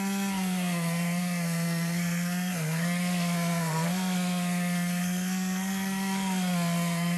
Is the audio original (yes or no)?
no